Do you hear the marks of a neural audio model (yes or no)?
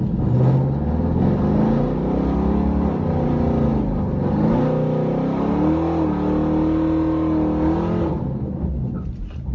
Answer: no